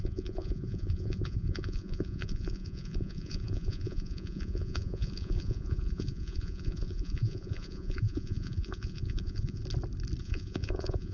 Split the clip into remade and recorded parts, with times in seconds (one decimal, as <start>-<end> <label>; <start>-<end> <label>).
0.0-9.6 remade; 9.6-10.2 recorded; 10.2-11.1 remade